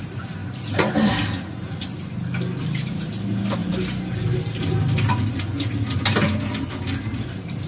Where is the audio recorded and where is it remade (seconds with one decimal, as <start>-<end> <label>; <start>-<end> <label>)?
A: 0.0-7.7 recorded